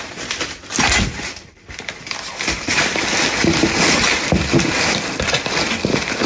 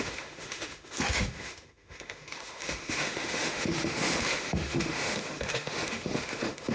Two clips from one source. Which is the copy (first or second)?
second